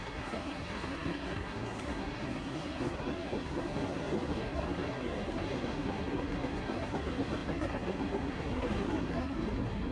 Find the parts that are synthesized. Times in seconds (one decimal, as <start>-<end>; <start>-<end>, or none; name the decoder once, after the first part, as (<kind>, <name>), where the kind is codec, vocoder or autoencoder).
0.0-9.9 (codec, SNAC)